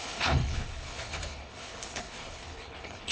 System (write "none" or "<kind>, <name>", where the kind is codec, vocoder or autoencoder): codec, HILCodec